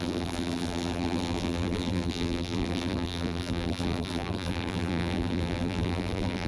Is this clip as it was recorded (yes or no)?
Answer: no